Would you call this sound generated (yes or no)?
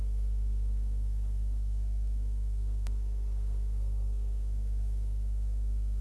yes